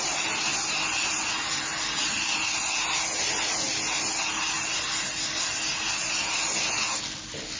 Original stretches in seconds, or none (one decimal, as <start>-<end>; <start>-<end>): 0.0-7.6

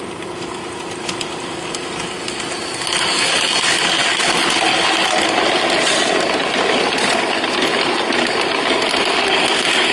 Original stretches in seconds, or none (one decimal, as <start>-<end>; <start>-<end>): 0.0-9.9

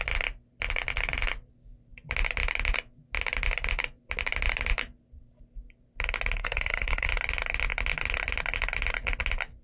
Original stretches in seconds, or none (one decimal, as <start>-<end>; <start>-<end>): 0.0-6.4; 7.1-9.6

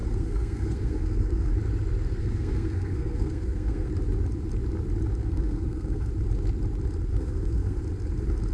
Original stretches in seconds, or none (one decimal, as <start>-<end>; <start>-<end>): 1.5-2.2; 3.9-5.2; 6.1-7.1; 7.8-8.5